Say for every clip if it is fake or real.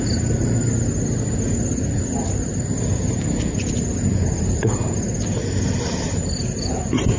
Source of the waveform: real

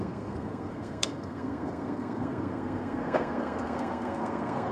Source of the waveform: fake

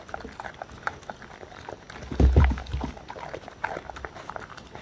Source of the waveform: real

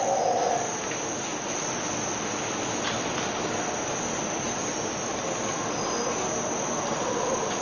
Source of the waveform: real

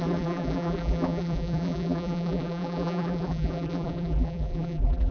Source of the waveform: fake